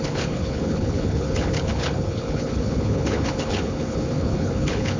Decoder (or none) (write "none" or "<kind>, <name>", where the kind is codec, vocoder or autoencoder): codec, HILCodec